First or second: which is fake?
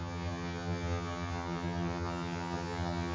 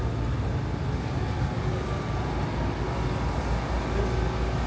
first